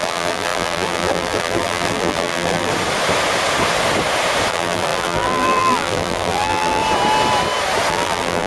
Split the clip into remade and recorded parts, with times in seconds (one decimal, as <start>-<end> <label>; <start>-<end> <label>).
0.0-2.7 remade; 2.7-4.5 recorded; 4.5-6.8 remade; 6.8-7.9 recorded; 7.9-8.5 remade